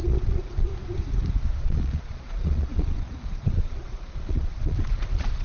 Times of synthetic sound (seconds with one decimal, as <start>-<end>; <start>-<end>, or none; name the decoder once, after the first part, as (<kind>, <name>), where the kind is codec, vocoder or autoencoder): 0.0-0.7 (vocoder, Vocos); 1.6-5.4